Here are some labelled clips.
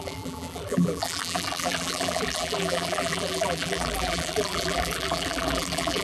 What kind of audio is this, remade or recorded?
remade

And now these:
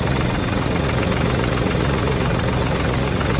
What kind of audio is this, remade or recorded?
remade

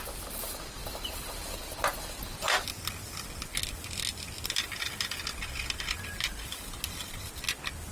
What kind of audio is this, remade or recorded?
recorded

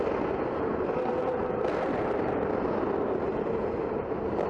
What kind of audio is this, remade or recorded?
recorded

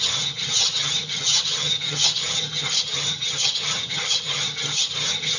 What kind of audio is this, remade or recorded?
remade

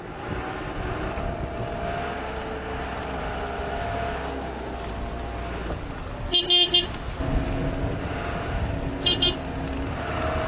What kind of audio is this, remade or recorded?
recorded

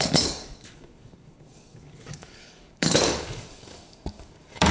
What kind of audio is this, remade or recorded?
remade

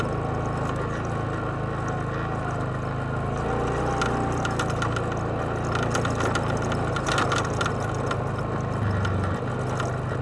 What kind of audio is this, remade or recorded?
recorded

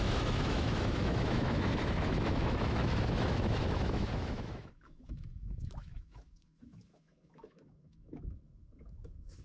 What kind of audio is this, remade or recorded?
remade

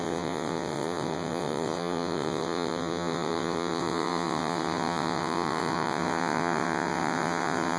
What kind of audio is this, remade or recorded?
remade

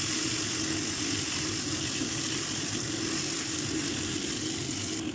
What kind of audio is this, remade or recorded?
recorded